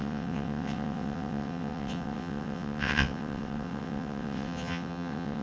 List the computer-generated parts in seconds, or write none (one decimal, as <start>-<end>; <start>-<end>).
0.0-5.4